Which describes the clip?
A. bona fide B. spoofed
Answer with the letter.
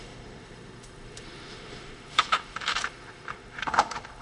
B